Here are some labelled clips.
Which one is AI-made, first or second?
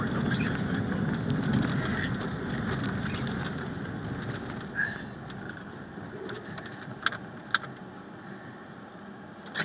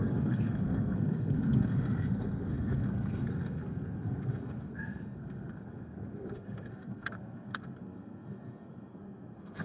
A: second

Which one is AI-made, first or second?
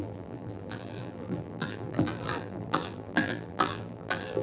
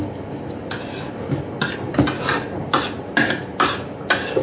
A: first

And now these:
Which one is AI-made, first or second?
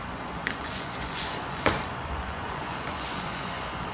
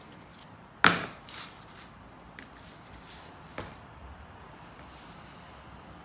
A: first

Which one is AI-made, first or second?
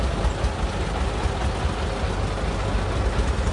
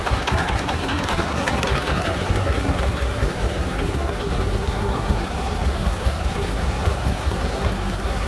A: second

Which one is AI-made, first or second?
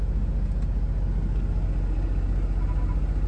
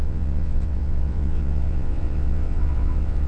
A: second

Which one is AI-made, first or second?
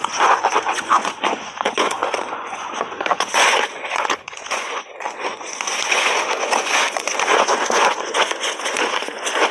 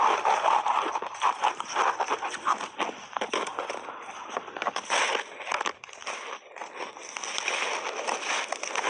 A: first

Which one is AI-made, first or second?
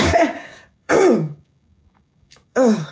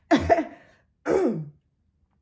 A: first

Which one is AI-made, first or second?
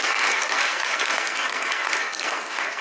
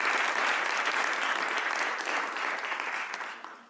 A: first